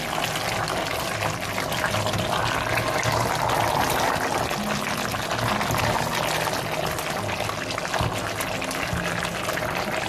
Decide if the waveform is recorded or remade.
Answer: recorded